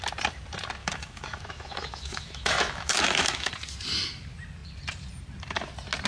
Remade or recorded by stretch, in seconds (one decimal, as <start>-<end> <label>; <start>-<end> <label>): 0.0-0.8 recorded; 0.8-3.5 remade; 3.5-6.1 recorded